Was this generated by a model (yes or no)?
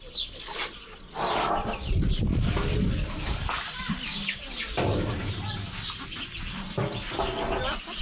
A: yes